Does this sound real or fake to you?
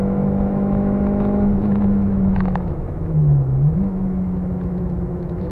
fake